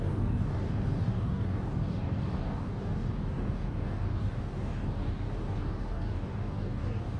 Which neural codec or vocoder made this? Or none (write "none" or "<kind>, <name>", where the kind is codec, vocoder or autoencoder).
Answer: codec, DAC